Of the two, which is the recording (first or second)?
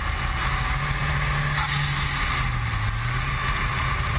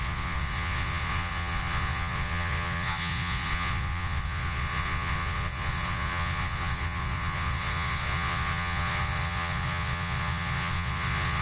first